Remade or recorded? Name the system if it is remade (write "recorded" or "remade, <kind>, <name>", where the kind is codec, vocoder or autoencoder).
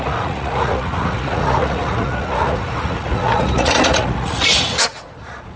remade, vocoder, Vocos